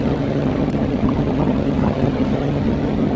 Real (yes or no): no